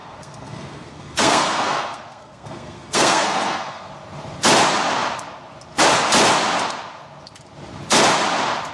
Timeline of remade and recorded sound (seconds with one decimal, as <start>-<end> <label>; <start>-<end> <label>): 0.0-3.9 remade; 3.9-8.7 recorded